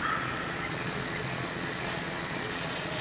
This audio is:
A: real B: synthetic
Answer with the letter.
B